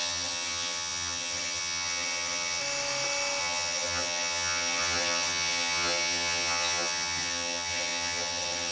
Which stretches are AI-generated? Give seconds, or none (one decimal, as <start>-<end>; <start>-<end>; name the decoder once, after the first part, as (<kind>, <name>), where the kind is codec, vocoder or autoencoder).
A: 0.0-2.6 (vocoder, HiFi-GAN); 3.4-8.7